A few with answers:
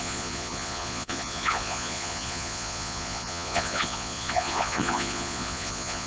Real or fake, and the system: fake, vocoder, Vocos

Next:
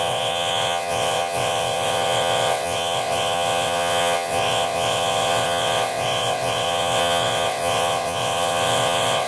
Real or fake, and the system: fake, vocoder, WaveNeXt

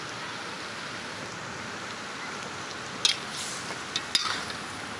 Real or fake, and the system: real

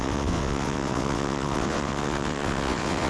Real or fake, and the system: fake, vocoder, WaveNeXt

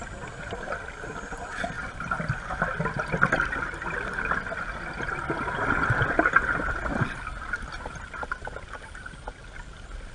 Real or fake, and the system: real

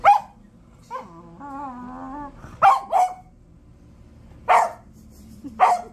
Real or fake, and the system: real